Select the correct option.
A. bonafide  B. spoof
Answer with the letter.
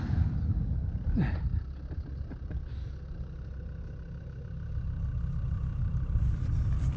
A